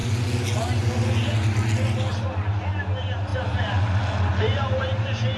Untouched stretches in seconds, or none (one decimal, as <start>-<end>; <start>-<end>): 0.0-5.4

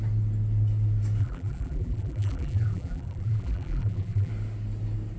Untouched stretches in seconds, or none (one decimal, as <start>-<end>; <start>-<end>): 0.0-1.2; 4.3-5.2